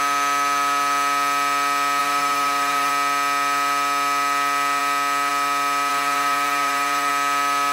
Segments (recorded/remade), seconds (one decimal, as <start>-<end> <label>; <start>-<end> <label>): 0.0-2.0 recorded; 2.0-2.9 remade; 2.9-5.9 recorded; 5.9-7.1 remade; 7.1-7.7 recorded